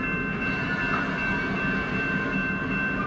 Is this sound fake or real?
real